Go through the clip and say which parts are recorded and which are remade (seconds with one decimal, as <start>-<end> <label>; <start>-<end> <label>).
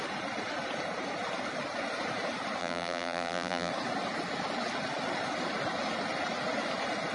0.0-2.6 recorded; 2.6-3.7 remade; 3.7-7.1 recorded